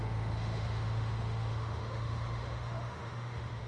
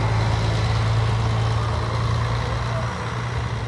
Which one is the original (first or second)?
second